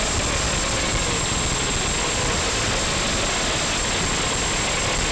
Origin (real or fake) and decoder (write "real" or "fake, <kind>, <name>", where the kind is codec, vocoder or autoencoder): real